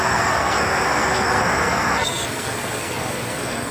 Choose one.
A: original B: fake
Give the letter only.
B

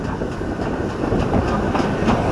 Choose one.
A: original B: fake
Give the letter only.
A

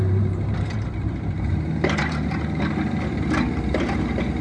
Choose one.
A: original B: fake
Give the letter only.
B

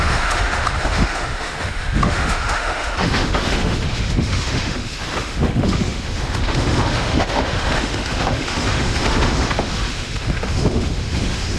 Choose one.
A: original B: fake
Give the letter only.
B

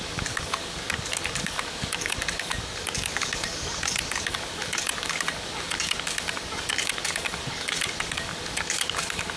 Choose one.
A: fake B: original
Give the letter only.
A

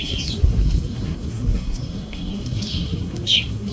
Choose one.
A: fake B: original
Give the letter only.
A